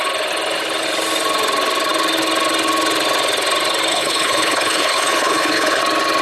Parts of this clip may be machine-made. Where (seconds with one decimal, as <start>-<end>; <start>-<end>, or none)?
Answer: 3.9-5.8